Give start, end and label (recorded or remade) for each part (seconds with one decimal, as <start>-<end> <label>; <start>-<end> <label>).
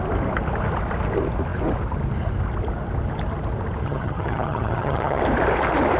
0.0-3.8 recorded; 3.8-5.2 remade; 5.2-6.0 recorded